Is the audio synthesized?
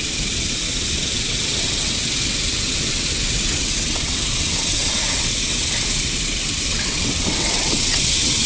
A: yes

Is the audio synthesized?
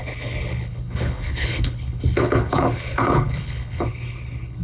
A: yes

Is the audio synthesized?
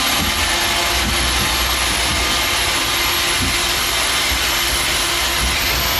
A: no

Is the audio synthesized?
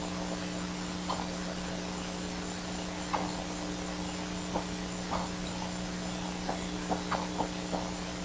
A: no